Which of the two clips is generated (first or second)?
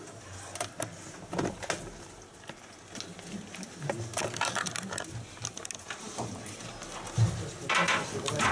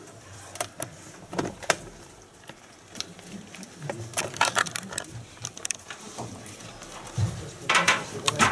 second